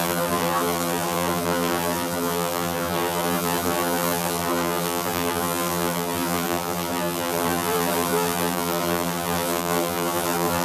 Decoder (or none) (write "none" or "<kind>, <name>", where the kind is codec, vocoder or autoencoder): vocoder, BigVGAN v2